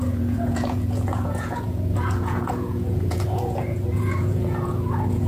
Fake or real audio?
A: fake